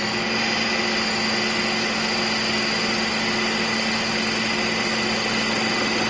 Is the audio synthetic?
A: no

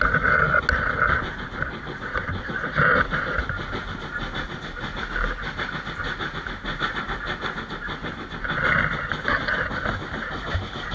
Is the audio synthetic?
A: no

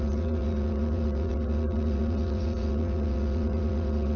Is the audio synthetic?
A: yes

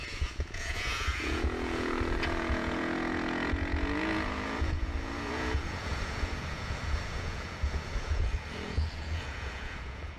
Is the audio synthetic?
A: yes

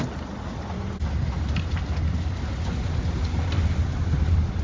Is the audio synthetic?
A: no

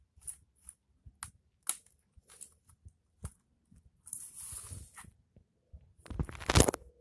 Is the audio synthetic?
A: no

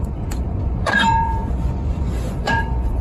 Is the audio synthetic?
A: yes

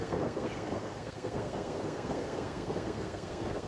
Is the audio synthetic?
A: yes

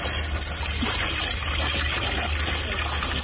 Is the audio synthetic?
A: no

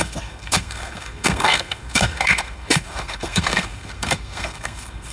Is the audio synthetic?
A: yes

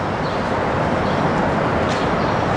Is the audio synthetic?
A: no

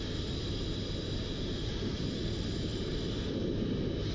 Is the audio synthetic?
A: yes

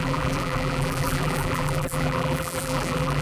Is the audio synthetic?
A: yes